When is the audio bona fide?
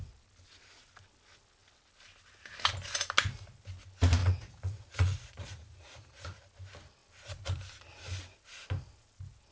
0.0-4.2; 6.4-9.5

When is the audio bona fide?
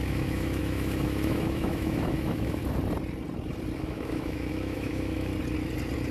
2.6-3.8; 5.3-6.1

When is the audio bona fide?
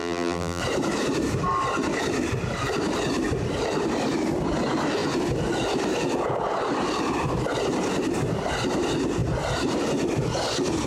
0.6-10.9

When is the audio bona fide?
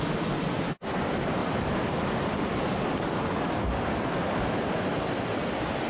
0.0-5.9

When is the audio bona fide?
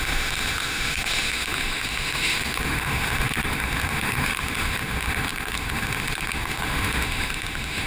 none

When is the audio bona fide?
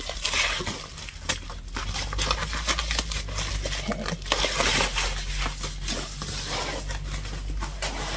0.0-8.2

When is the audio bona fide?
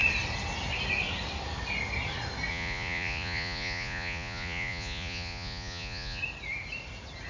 0.0-2.5; 6.2-7.3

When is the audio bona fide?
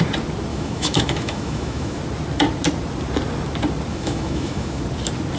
0.0-0.5; 2.0-3.9; 4.8-5.4